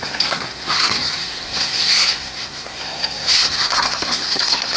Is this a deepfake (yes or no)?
yes